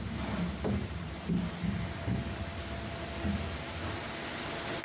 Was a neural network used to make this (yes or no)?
no